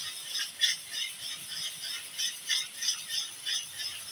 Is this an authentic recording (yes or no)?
yes